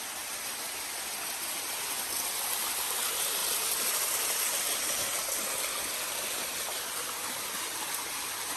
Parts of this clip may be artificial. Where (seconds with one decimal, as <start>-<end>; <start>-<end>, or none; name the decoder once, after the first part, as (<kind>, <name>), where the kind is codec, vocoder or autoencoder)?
none